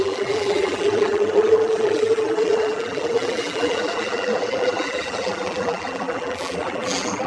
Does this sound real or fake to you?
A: fake